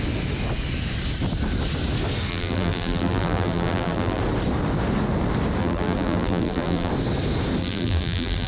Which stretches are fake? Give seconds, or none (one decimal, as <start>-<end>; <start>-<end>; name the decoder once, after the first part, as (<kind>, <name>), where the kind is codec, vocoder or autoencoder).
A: 2.3-4.2 (vocoder, BigVGAN v2); 5.6-6.9; 7.6-8.5

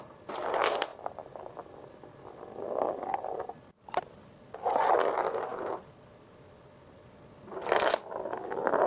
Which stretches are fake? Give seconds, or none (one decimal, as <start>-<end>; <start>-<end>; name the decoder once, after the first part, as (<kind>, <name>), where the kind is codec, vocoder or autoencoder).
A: none

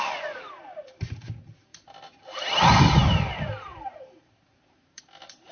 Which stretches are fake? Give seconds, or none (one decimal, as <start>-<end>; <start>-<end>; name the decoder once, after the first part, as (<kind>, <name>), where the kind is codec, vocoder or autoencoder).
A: none

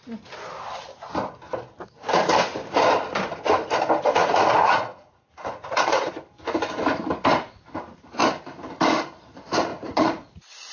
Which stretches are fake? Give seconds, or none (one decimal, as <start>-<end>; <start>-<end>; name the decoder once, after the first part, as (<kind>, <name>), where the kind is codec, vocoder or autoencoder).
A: 4.2-6.1 (vocoder, Vocos); 9.7-10.7

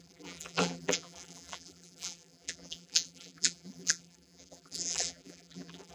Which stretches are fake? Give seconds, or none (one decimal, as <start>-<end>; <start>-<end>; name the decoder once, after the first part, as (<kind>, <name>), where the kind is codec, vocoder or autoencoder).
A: 0.0-5.9 (vocoder, BigVGAN v2)

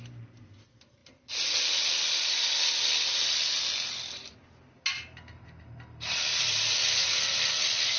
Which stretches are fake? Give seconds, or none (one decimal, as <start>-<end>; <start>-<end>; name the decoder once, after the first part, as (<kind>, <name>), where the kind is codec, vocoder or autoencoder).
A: none

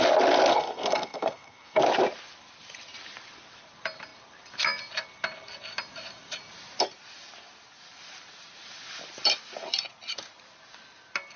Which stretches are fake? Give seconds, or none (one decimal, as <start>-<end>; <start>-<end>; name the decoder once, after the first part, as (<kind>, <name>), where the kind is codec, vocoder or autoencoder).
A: 0.5-1.8 (codec, SNAC)